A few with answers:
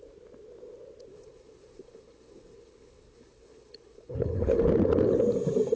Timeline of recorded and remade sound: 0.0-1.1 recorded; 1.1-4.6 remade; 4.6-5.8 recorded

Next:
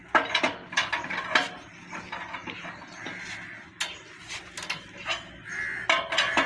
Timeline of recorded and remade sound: 0.0-6.5 recorded

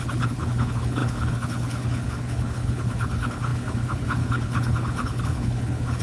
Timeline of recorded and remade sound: 0.0-6.0 remade

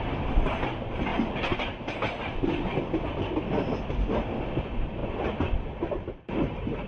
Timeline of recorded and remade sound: 0.0-6.9 recorded